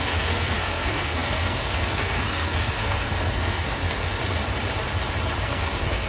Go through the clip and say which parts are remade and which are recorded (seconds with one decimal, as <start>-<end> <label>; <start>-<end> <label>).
0.0-4.2 remade; 4.2-5.4 recorded; 5.4-6.1 remade